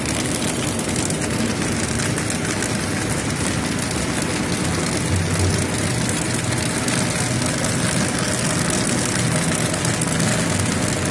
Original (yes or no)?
yes